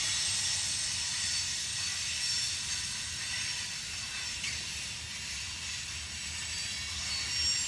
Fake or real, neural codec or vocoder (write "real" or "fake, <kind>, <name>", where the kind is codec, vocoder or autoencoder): real